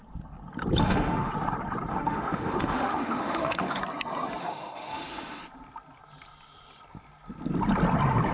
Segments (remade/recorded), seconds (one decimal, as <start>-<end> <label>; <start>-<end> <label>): 0.0-0.8 recorded; 0.8-1.3 remade; 1.3-1.9 recorded; 1.9-3.8 remade; 3.8-4.4 recorded; 4.4-5.4 remade; 5.4-8.3 recorded